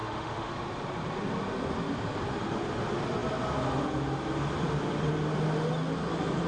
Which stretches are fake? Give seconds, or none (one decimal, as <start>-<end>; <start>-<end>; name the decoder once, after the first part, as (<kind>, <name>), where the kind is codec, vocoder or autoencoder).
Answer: 0.0-0.5 (autoencoder, DAC-VAE)